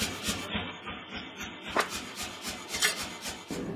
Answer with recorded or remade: recorded